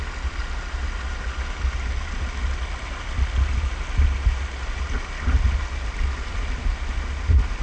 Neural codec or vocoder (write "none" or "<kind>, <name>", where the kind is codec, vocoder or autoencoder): none